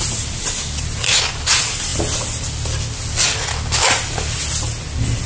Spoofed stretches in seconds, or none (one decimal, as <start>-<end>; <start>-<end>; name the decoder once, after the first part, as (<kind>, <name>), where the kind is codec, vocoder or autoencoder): none